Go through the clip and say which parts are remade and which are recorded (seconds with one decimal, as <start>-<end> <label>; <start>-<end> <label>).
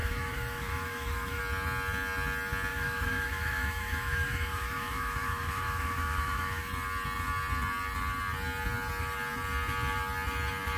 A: 0.0-1.4 remade; 1.4-2.7 recorded; 2.7-6.7 remade; 6.7-10.8 recorded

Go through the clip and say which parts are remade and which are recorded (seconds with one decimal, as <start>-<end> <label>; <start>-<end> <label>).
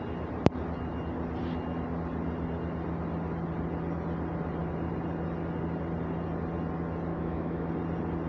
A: 0.0-7.1 recorded; 7.1-7.7 remade; 7.7-8.3 recorded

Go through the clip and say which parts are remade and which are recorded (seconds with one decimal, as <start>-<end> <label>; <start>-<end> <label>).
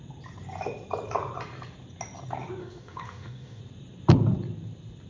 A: 0.0-2.6 recorded; 2.6-3.6 remade; 3.6-5.1 recorded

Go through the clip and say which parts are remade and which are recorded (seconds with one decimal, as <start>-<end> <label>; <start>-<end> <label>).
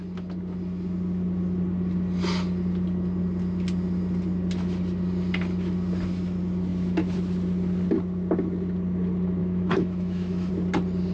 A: 0.0-9.4 recorded; 9.4-10.5 remade; 10.5-11.1 recorded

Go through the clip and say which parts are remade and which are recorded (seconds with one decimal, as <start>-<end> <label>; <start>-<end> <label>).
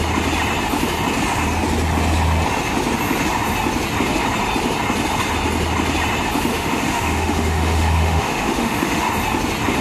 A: 0.0-6.5 recorded; 6.5-9.1 remade; 9.1-9.8 recorded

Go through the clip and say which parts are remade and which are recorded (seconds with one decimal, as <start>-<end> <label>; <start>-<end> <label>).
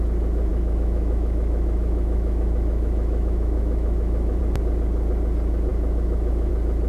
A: 0.0-0.5 recorded; 0.5-4.4 remade; 4.4-5.7 recorded; 5.7-6.5 remade; 6.5-6.9 recorded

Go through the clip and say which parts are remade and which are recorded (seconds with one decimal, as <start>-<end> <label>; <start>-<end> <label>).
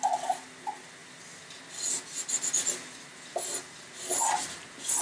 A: 0.0-5.0 recorded